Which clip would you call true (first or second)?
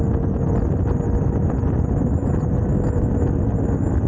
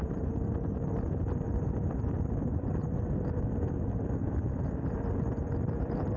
first